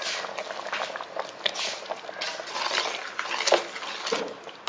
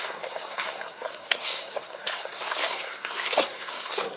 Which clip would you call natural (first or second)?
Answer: first